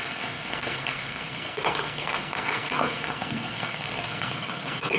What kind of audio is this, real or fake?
fake